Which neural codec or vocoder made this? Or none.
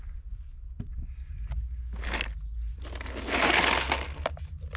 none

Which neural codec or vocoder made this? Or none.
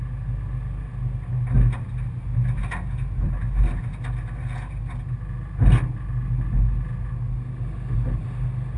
none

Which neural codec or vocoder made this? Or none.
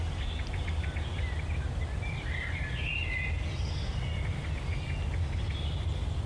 none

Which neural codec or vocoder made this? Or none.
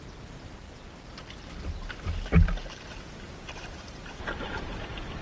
none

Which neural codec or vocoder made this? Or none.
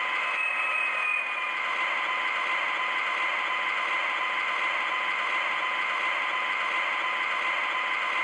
none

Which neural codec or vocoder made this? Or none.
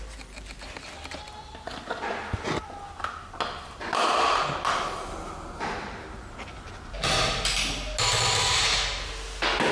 none